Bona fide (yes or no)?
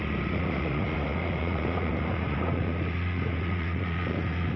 no